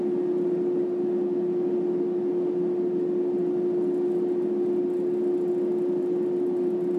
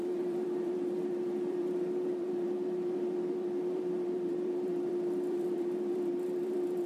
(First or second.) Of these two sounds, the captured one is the first